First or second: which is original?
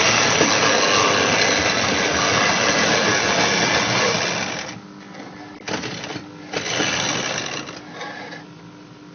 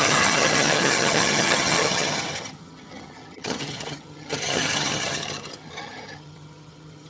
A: first